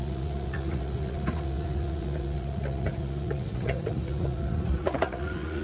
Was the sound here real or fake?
fake